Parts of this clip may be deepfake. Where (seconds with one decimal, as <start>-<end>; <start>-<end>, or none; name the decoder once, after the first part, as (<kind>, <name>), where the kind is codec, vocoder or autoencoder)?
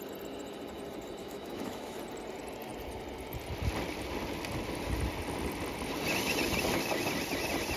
1.2-2.0 (autoencoder, DAC-VAE)